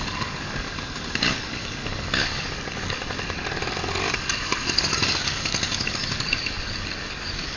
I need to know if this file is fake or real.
fake